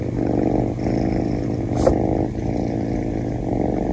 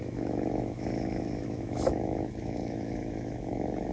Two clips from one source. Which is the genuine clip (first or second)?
first